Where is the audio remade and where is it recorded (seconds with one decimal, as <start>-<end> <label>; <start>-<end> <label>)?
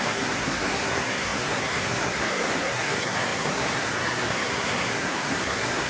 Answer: 0.0-5.9 remade